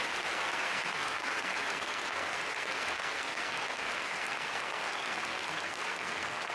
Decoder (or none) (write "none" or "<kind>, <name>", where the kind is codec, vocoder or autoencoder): codec, SNAC